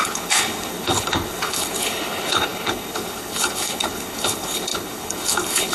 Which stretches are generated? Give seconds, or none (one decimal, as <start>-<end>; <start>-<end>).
0.0-5.7